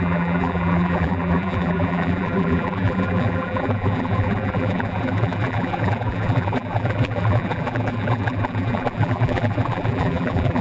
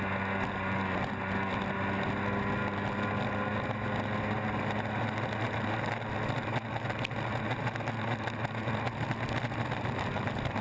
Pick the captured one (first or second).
second